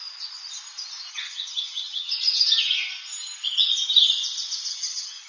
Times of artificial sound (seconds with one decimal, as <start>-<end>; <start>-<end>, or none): 1.1-2.1; 4.7-5.3